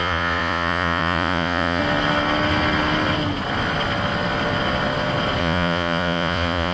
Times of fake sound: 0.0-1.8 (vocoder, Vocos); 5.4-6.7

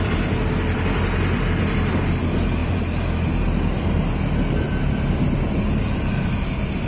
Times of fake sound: none